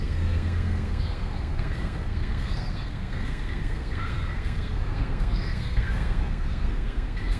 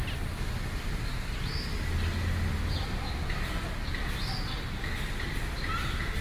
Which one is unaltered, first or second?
second